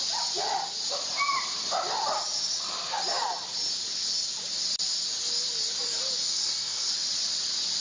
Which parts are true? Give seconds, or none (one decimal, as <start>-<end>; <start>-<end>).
0.0-6.3; 6.9-7.8